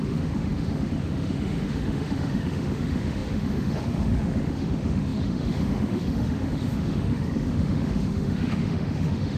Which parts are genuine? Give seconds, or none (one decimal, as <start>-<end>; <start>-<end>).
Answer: none